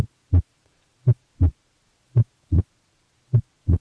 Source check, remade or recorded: remade